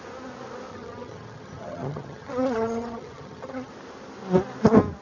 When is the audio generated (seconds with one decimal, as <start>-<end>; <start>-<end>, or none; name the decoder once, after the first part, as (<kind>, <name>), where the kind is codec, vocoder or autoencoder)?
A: 0.7-3.7 (vocoder, HiFi-GAN)